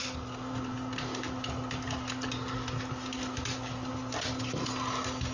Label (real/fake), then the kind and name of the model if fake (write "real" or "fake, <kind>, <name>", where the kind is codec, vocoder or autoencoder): real